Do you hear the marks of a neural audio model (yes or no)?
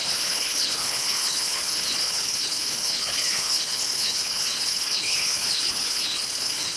yes